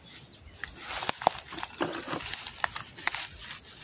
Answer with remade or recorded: recorded